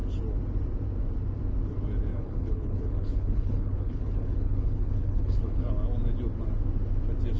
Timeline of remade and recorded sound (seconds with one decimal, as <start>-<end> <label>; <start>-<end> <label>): 0.0-2.1 recorded; 2.1-5.7 remade; 5.7-7.4 recorded